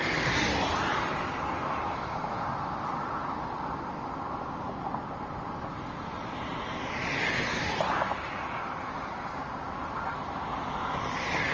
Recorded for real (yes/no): yes